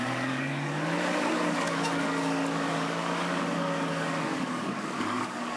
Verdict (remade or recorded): remade